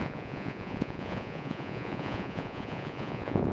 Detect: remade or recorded remade